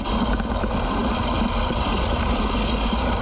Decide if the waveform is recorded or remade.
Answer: recorded